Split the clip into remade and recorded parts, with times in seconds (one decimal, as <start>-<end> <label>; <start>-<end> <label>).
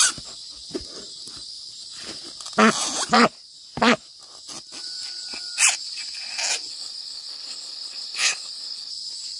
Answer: 0.0-6.7 recorded; 6.7-8.9 remade; 8.9-9.4 recorded